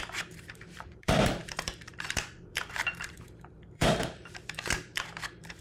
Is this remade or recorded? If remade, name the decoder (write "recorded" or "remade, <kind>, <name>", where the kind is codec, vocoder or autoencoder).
remade, vocoder, BigVGAN v2